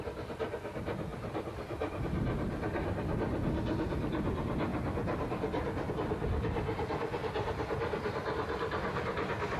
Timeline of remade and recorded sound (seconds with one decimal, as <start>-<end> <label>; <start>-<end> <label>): 0.0-1.1 recorded; 1.1-2.0 remade; 2.0-4.7 recorded; 4.7-5.9 remade; 5.9-9.6 recorded